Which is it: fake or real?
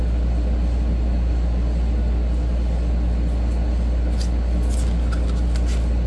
real